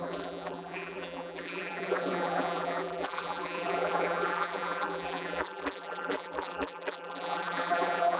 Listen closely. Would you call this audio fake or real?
fake